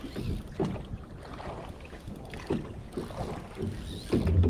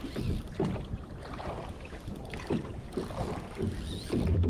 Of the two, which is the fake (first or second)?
second